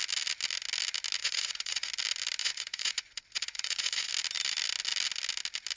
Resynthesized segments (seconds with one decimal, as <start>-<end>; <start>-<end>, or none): 1.2-1.9; 2.4-4.1